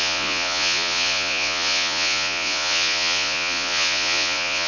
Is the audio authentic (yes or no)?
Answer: no